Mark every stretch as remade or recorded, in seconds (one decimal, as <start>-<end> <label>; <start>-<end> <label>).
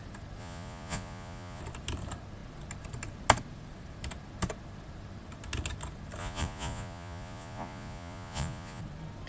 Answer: 0.0-0.4 recorded; 0.4-1.6 remade; 1.6-6.2 recorded; 6.2-8.8 remade; 8.8-9.3 recorded